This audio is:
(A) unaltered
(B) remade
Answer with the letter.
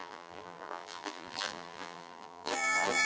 B